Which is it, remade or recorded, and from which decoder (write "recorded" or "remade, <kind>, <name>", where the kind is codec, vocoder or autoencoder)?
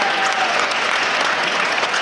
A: remade, vocoder, Vocos